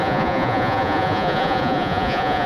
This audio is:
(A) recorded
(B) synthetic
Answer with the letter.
B